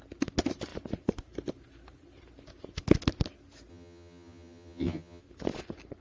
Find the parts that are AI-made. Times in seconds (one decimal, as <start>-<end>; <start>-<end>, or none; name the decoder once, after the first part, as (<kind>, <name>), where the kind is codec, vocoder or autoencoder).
3.7-5.2 (vocoder, HiFi-GAN)